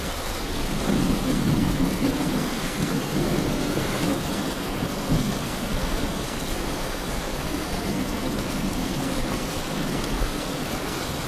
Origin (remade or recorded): remade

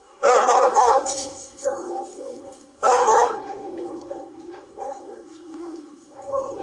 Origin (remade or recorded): remade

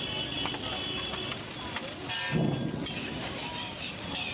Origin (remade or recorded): recorded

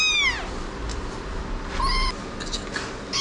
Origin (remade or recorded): recorded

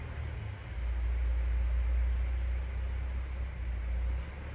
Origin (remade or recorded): recorded